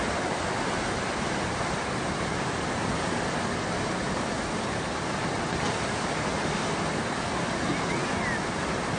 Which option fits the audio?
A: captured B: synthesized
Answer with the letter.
A